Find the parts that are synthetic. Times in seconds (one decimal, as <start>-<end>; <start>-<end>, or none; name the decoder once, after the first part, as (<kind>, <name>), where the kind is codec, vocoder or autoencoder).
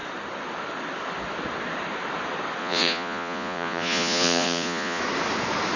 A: 2.6-5.0 (vocoder, Vocos)